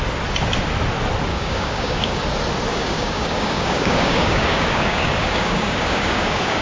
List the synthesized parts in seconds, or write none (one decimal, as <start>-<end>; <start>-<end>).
1.3-2.2; 2.7-6.6